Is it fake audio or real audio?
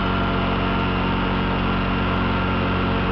real